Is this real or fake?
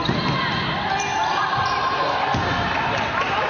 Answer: real